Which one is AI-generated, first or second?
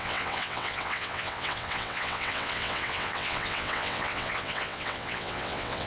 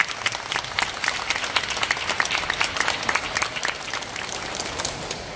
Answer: first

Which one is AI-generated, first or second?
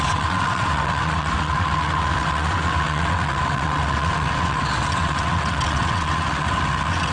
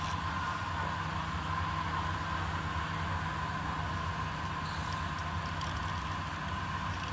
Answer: first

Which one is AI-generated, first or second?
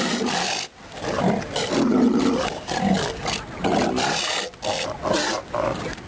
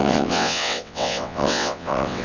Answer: second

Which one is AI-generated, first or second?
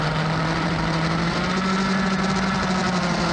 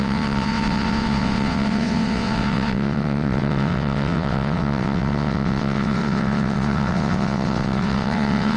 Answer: second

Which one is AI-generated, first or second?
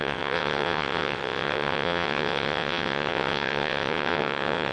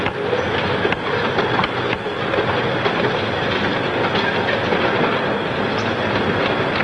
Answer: first